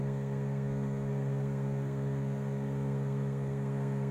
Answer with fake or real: fake